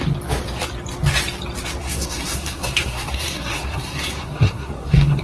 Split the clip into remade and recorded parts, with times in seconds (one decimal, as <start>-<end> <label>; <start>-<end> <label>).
0.0-1.8 recorded; 1.8-5.2 remade